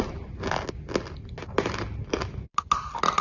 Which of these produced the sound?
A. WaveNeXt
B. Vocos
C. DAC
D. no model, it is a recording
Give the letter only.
D